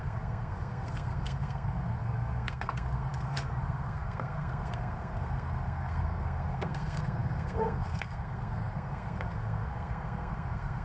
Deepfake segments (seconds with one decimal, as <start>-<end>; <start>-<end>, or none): 0.0-10.8